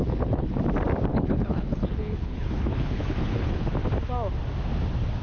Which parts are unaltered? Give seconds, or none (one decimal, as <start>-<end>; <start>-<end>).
0.6-1.1; 3.7-5.2